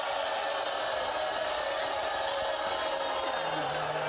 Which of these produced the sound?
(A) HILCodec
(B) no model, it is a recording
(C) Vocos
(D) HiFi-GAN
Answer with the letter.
B